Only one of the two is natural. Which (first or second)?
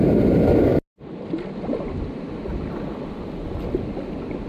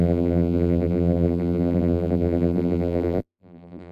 first